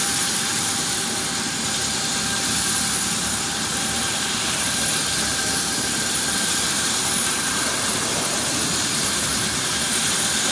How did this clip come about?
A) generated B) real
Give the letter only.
A